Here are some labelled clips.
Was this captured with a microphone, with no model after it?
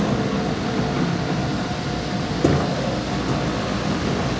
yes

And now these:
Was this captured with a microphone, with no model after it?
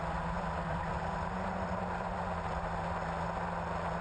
yes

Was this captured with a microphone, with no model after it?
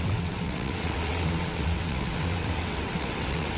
no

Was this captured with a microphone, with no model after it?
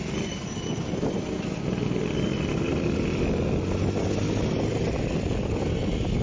yes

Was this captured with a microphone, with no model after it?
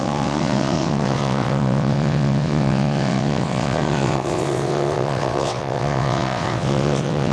no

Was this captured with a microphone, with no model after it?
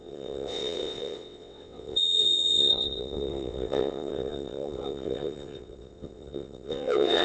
no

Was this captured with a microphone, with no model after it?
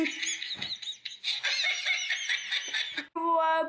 yes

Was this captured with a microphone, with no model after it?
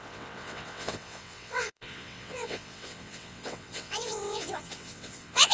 no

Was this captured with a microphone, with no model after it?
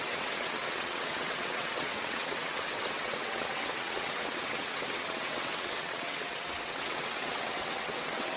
no